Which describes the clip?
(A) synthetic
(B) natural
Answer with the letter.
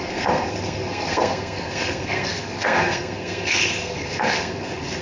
A